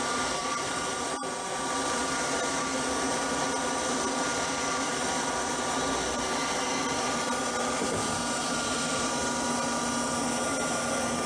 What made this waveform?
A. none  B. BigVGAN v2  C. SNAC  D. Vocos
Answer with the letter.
A